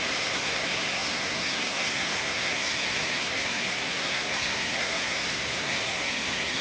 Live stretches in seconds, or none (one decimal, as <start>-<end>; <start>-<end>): none